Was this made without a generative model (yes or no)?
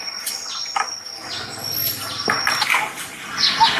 yes